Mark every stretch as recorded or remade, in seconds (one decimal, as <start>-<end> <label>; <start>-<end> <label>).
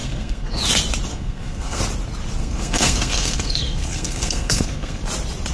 0.0-0.6 remade; 0.6-1.1 recorded; 1.1-1.8 remade; 1.8-2.4 recorded; 2.4-5.0 remade; 5.0-5.5 recorded